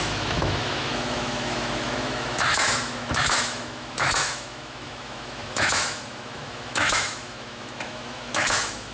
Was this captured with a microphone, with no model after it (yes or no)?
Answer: no